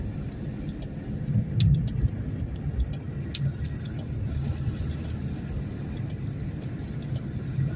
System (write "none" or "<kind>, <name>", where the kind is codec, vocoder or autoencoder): none